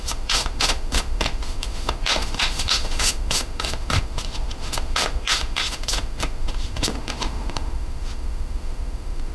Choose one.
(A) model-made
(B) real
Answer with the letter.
A